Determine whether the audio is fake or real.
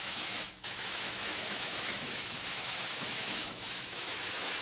fake